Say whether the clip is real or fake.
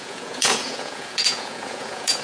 fake